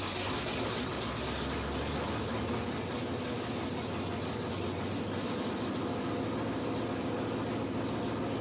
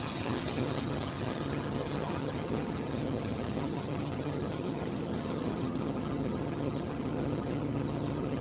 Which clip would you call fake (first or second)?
second